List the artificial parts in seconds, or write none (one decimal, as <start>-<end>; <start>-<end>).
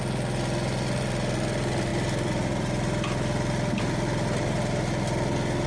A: none